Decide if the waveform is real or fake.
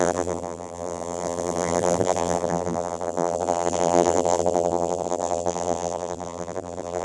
fake